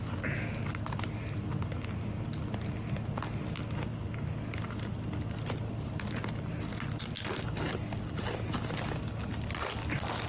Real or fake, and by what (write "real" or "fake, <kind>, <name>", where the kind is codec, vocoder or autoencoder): real